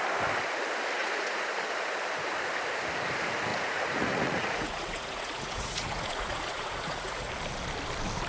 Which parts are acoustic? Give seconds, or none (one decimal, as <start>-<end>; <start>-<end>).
0.0-1.0; 1.6-3.5; 7.3-8.3